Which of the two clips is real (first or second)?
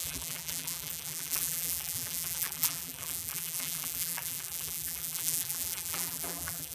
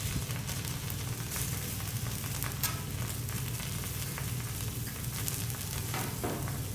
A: second